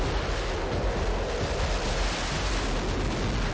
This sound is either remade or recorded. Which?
recorded